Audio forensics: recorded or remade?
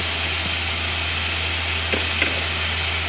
recorded